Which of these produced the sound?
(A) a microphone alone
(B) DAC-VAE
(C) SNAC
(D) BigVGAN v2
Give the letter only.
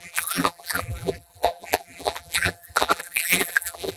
D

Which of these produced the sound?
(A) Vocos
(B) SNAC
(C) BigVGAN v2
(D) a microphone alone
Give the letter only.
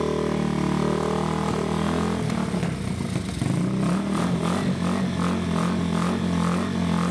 D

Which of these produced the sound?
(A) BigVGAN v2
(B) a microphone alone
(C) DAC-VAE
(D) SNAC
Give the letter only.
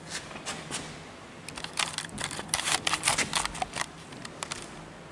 B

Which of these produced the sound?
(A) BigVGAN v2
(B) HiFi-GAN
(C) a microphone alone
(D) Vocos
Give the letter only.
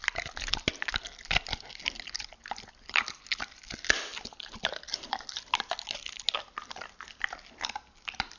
C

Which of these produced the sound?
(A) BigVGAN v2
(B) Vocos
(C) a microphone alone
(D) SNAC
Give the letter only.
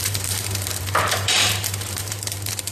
A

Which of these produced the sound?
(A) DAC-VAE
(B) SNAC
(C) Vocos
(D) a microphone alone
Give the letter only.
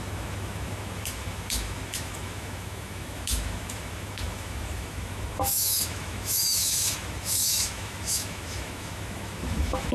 A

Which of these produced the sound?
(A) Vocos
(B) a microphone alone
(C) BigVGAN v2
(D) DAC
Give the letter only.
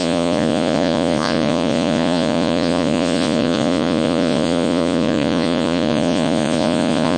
A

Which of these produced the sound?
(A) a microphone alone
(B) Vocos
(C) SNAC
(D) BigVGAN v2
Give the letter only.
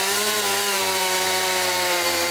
D